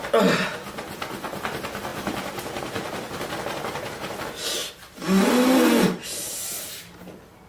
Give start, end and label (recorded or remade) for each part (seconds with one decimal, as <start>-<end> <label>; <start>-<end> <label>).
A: 0.0-7.5 recorded